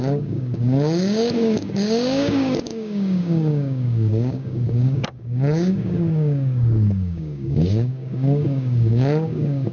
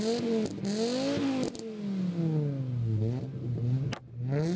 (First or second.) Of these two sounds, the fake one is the first